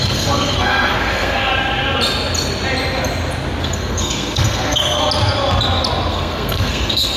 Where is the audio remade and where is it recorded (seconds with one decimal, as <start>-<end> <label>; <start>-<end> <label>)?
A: 0.0-1.5 remade; 1.5-3.6 recorded; 3.6-5.0 remade; 5.0-6.1 recorded; 6.1-7.2 remade